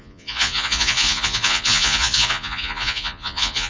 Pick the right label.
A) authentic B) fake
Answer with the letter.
B